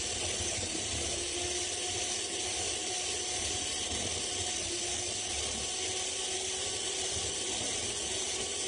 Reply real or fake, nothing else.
real